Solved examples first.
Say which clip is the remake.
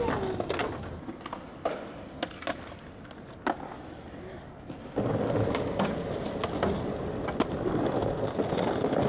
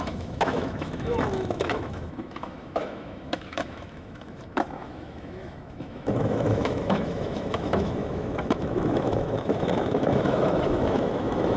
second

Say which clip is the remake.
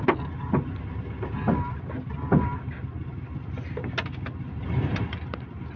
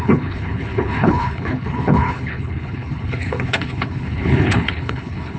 second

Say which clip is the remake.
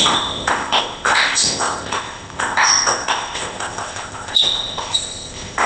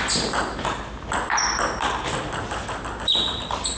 first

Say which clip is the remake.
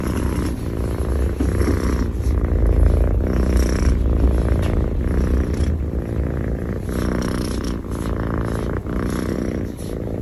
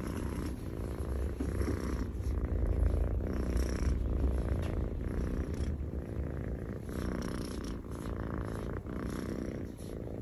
second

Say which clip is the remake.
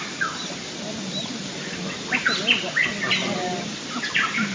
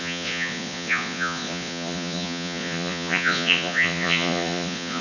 second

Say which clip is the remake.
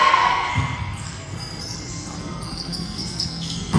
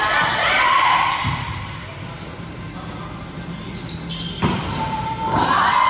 first